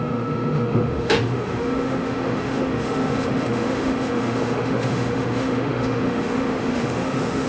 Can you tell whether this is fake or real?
fake